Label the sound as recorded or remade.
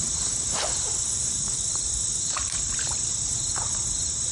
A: remade